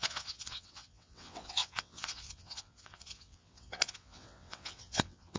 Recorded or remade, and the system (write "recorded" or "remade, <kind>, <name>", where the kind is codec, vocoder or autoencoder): remade, vocoder, WaveNeXt